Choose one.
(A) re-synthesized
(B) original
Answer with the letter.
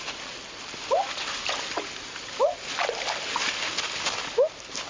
B